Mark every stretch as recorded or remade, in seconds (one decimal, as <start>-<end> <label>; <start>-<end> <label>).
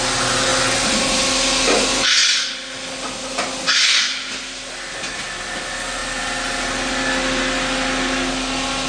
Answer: 0.0-8.9 recorded